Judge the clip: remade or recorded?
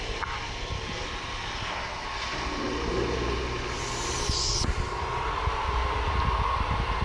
recorded